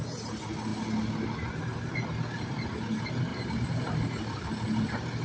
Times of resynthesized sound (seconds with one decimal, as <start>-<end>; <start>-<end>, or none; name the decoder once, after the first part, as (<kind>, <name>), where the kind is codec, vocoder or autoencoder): 3.3-4.5 (vocoder, BigVGAN v2)